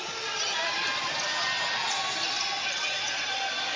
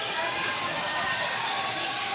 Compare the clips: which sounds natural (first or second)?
first